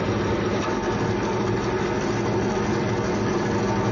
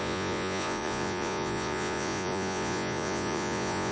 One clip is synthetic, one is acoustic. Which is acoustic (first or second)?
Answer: first